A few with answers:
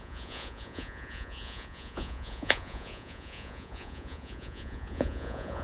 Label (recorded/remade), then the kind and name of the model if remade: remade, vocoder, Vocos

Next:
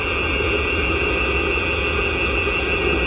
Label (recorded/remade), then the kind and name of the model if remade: recorded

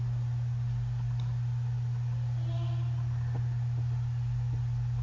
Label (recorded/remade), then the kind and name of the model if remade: recorded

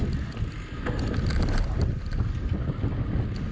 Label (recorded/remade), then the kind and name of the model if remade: recorded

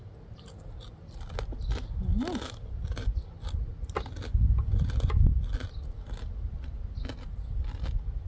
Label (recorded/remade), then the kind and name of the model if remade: recorded